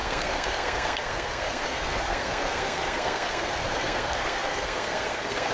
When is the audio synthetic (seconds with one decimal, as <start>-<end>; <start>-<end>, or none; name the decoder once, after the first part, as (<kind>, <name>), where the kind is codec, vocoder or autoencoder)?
0.0-5.5 (codec, SNAC)